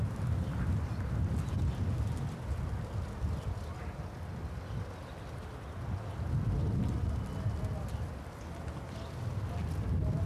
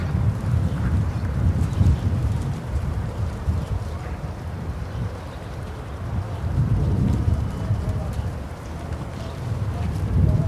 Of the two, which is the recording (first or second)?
first